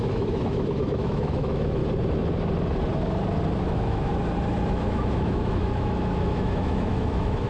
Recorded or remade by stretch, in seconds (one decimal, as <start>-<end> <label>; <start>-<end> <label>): 0.0-1.8 remade; 1.8-3.6 recorded; 3.6-4.1 remade; 4.1-4.7 recorded; 4.7-7.5 remade